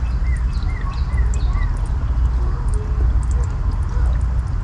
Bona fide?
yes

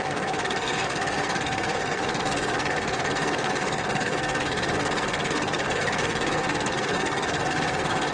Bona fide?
no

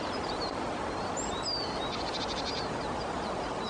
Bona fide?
yes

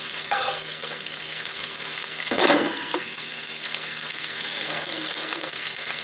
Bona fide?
no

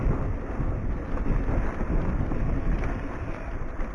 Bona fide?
yes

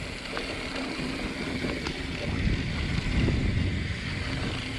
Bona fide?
yes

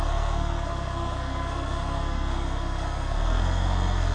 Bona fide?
no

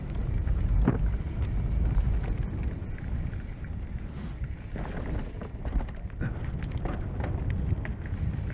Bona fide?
yes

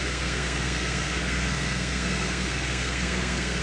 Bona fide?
no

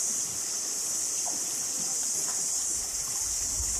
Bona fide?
yes